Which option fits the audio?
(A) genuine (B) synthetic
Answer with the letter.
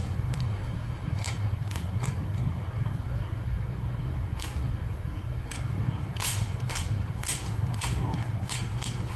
B